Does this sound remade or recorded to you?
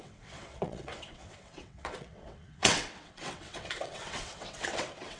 remade